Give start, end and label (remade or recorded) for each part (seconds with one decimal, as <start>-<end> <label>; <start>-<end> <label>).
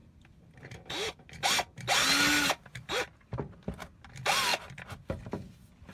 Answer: 0.0-5.9 recorded